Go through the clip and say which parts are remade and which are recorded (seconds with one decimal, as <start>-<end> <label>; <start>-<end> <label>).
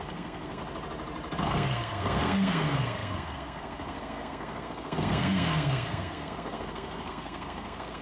0.0-0.6 remade; 0.6-1.4 recorded; 1.4-8.0 remade